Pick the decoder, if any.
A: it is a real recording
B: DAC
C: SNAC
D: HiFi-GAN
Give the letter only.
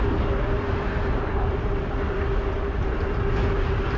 A